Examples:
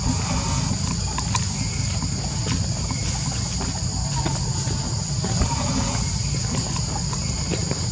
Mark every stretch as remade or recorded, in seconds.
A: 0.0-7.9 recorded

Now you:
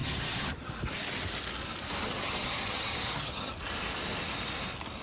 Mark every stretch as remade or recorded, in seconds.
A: 0.0-0.7 remade; 0.7-2.0 recorded; 2.0-3.5 remade; 3.5-5.0 recorded

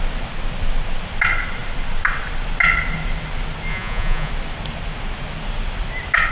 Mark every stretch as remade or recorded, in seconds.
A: 0.0-3.7 recorded; 3.7-4.3 remade; 4.3-6.3 recorded

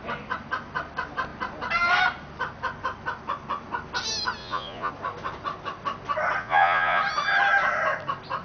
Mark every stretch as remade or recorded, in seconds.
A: 0.0-4.4 recorded; 4.4-4.9 remade; 4.9-6.4 recorded; 6.4-7.0 remade; 7.0-8.4 recorded

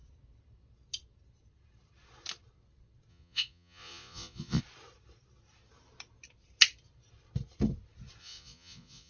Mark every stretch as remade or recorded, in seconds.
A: 0.0-3.1 recorded; 3.1-4.6 remade; 4.6-8.2 recorded; 8.2-9.1 remade

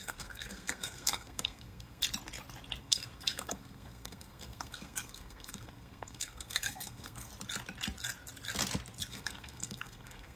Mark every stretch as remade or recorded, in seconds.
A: 0.0-2.0 remade; 2.0-2.8 recorded; 2.8-7.3 remade; 7.3-9.1 recorded; 9.1-10.4 remade